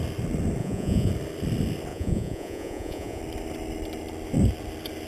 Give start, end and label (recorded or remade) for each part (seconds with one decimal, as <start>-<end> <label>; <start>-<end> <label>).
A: 0.0-0.6 recorded; 0.6-1.1 remade; 1.1-1.9 recorded; 1.9-3.2 remade; 3.2-5.1 recorded